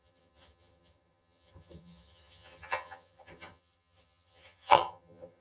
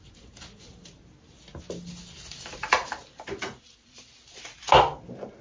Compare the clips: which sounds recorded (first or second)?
second